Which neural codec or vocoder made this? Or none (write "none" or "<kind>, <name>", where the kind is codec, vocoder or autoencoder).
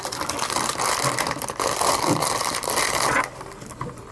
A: vocoder, BigVGAN v2